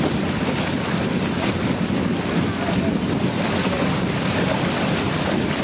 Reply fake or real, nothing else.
real